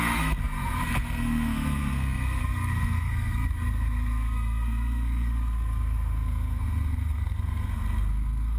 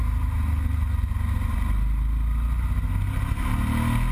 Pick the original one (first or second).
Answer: second